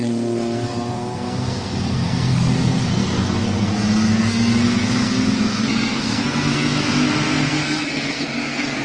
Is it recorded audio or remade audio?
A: remade